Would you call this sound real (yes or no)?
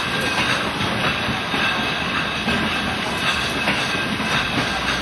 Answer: yes